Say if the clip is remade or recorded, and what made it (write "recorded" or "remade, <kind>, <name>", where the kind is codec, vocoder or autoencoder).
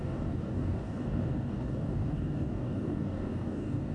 remade, codec, DAC